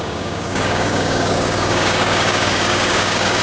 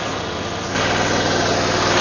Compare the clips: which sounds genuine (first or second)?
second